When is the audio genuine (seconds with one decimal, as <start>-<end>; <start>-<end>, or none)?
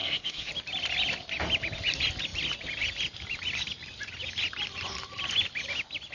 0.5-6.1